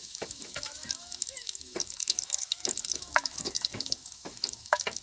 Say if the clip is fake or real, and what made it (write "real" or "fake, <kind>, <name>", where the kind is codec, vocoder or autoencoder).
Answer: fake, autoencoder, DAC-VAE